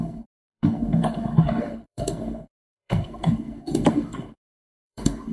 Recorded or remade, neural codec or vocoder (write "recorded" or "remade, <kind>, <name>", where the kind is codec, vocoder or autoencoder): remade, codec, SNAC